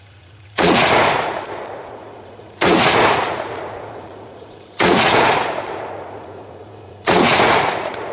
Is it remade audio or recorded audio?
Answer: remade